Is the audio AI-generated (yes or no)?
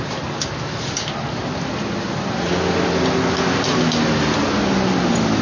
no